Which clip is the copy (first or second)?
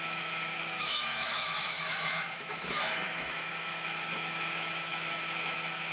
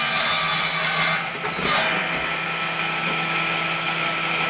first